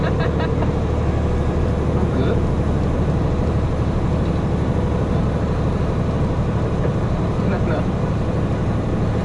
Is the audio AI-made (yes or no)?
no